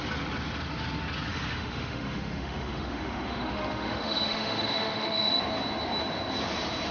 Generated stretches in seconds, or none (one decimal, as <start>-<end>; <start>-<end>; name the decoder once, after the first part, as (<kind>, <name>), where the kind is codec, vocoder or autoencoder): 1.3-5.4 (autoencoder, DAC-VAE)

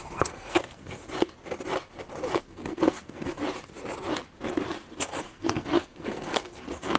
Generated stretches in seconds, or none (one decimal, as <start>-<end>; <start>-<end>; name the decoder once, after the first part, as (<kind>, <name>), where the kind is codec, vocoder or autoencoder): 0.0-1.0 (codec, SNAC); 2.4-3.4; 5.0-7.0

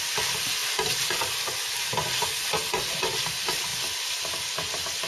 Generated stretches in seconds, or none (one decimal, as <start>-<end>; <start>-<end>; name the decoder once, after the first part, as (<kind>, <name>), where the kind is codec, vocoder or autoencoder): none